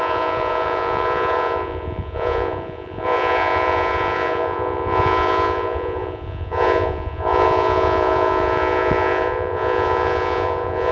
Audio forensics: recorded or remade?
remade